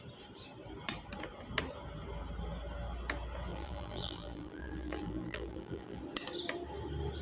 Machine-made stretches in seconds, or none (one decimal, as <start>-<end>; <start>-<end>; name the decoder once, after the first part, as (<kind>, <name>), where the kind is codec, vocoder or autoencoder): 3.5-6.0 (vocoder, BigVGAN v2)